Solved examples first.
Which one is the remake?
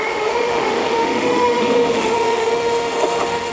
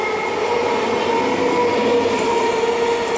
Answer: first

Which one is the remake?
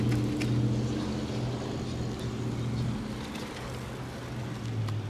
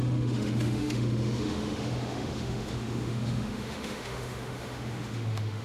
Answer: second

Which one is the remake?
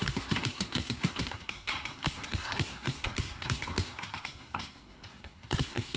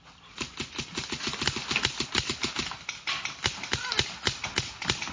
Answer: first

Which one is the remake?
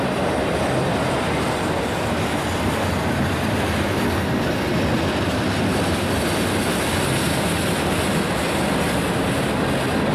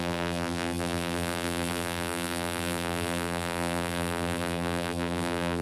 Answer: second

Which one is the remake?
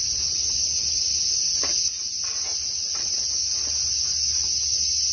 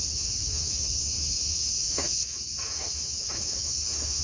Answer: second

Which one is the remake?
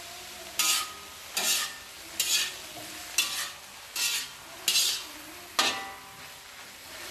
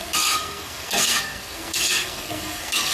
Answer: second